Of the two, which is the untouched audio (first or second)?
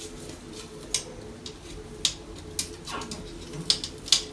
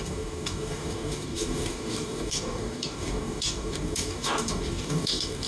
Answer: first